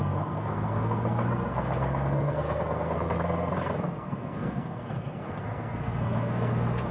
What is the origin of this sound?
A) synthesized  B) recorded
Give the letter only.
A